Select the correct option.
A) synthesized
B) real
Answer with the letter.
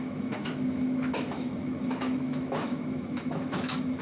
A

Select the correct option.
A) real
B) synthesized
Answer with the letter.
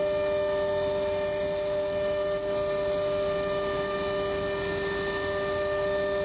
A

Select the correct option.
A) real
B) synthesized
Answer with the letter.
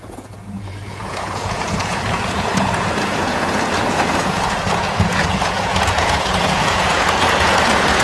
B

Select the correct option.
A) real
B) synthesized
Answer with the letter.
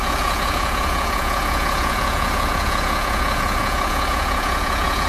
B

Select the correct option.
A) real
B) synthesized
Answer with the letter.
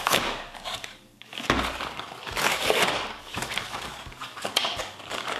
B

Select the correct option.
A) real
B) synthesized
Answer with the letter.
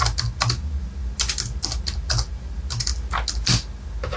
A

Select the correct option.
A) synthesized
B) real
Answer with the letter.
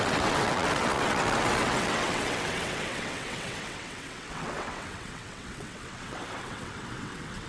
A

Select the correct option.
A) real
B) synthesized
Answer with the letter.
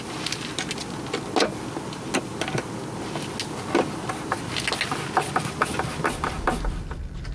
A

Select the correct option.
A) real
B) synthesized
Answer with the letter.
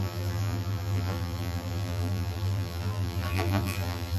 B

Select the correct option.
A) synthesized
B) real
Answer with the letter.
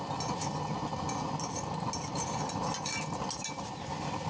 B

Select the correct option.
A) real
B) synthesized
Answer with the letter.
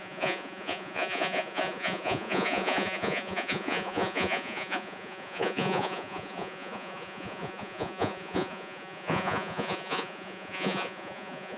B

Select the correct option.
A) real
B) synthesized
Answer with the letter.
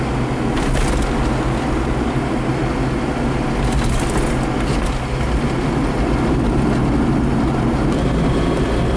A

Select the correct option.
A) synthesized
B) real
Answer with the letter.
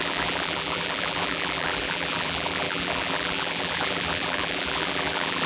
A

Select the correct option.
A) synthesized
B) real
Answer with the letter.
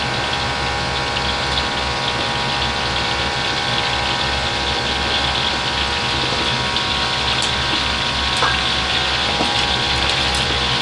B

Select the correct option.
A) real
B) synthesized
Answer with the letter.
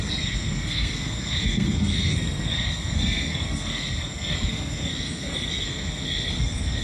B